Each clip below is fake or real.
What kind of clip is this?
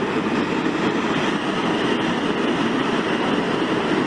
real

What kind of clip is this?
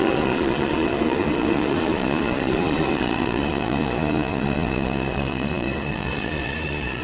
fake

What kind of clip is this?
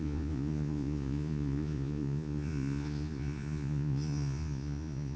fake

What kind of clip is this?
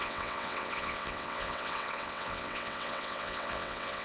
fake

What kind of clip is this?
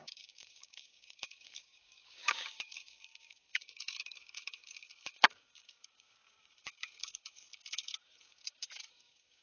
fake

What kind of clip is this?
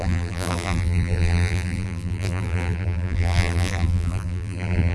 fake